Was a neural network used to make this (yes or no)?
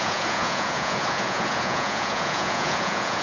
yes